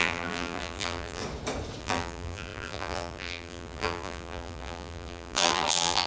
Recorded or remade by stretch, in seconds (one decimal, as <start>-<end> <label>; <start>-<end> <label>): 0.0-1.2 remade; 1.2-1.8 recorded; 1.8-6.1 remade